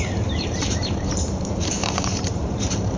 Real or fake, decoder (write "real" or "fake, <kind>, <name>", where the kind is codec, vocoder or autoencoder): fake, vocoder, BigVGAN v2